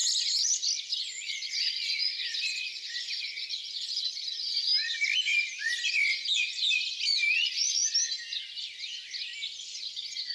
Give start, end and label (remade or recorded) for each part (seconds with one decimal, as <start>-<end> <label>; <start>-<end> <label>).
0.0-0.9 recorded; 0.9-4.7 remade; 4.7-7.3 recorded; 7.3-7.8 remade; 7.8-9.9 recorded; 9.9-10.3 remade